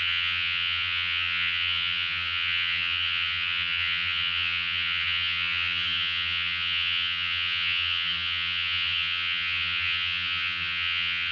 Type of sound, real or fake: fake